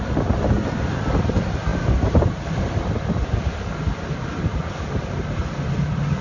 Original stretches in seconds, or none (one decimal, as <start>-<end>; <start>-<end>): 0.0-6.2